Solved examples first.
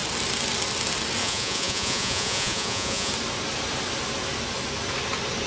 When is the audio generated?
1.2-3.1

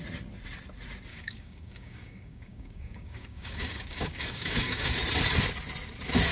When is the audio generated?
1.1-4.9

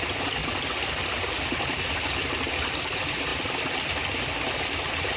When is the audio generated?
0.0-0.4; 1.7-5.2

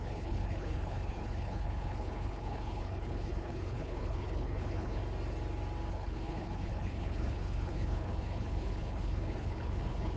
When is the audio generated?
0.0-5.0; 5.9-10.2

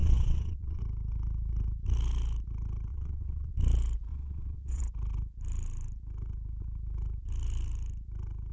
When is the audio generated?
0.0-0.8; 2.9-3.5; 4.1-4.8

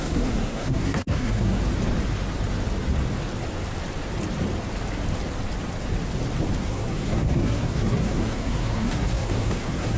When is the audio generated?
0.0-1.6; 6.6-10.0